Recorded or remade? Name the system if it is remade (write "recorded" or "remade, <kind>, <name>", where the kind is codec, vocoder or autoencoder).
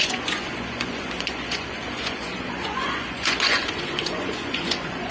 remade, vocoder, Vocos